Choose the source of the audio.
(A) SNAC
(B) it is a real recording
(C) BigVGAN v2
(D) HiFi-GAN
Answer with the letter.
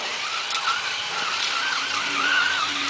C